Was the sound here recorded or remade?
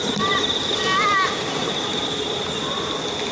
recorded